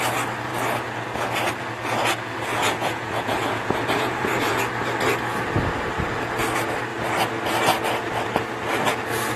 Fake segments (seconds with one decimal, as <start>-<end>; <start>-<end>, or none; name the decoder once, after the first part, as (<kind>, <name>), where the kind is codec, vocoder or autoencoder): 2.5-4.6 (vocoder, Vocos)